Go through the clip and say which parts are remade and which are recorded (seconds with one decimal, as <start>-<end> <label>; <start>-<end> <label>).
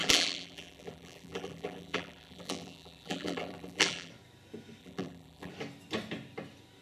0.0-4.1 remade; 4.1-4.8 recorded; 4.8-5.5 remade; 5.5-6.8 recorded